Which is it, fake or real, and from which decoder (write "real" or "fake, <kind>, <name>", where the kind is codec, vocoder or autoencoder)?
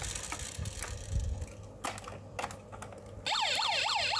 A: real